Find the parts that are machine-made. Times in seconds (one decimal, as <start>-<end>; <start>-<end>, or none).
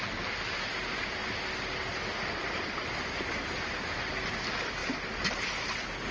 none